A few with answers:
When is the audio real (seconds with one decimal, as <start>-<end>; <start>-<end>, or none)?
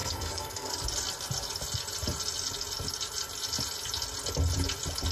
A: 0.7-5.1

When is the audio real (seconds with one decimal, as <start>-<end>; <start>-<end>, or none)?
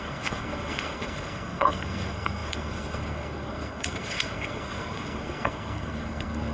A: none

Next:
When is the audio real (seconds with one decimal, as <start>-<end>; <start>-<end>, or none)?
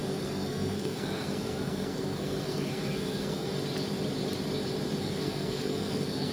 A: 3.5-5.0